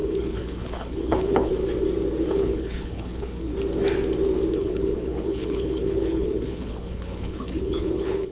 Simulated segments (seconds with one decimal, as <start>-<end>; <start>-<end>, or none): 0.0-1.5; 2.3-3.5; 4.5-8.3